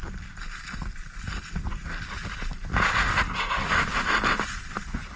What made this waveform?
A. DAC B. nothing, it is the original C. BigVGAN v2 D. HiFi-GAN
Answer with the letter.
B